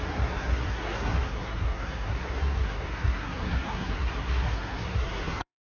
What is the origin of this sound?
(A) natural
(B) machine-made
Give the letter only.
B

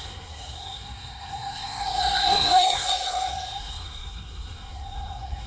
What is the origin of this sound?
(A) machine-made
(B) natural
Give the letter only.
A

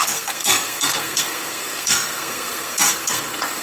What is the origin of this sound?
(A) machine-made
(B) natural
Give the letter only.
A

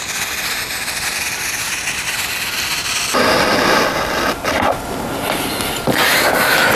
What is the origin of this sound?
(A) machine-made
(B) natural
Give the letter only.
B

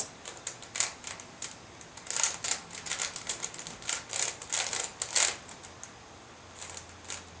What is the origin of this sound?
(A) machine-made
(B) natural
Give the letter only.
B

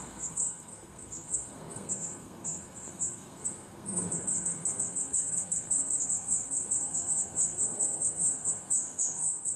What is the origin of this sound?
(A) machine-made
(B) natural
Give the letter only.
A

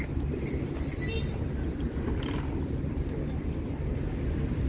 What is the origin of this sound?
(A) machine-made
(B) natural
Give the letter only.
B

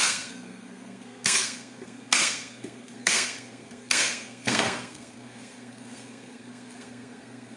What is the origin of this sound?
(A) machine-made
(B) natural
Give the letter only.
A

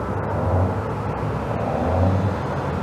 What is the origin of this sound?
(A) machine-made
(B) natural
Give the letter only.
B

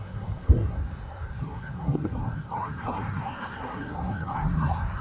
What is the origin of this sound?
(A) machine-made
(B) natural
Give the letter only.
A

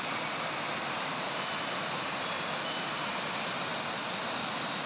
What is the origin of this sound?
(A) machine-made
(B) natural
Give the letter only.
B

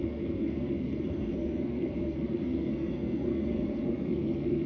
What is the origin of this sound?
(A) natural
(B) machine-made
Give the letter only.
B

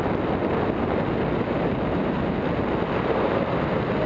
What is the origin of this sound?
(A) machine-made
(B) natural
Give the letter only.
B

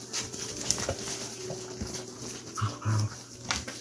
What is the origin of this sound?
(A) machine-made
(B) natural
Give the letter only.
B